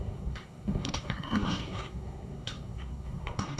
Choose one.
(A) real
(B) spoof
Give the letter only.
B